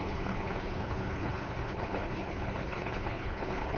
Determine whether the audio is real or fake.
fake